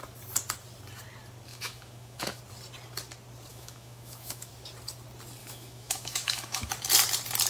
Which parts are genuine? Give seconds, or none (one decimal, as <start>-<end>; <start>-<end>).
0.0-1.5; 2.4-3.5; 4.5-5.4; 6.7-7.5